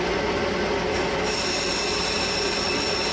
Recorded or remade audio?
recorded